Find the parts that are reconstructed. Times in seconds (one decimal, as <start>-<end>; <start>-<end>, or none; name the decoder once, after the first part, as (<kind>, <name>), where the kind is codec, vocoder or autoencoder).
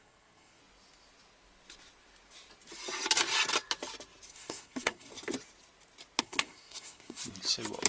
0.0-0.6 (codec, SNAC); 4.3-5.1; 6.2-7.2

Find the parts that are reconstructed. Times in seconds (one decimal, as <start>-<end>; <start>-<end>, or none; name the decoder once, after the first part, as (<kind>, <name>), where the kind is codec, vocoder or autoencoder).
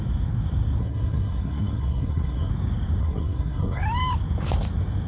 0.8-2.5 (codec, SNAC); 3.0-3.8